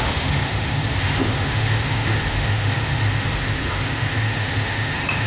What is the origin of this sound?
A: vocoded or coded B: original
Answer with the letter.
A